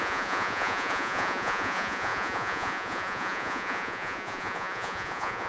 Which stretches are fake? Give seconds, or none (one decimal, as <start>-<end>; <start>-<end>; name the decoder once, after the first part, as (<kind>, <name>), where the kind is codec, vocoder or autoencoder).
0.0-5.5 (vocoder, Vocos)